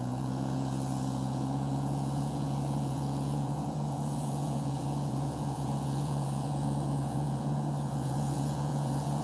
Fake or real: fake